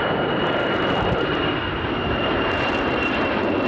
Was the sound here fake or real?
fake